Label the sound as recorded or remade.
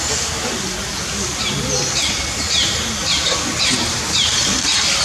remade